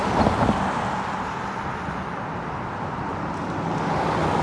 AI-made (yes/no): no